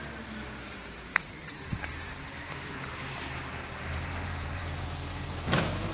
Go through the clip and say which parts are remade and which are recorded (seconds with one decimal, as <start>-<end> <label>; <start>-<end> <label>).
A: 0.0-1.1 recorded; 1.1-4.6 remade; 4.6-5.9 recorded